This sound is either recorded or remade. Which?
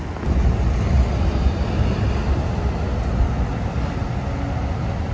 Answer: recorded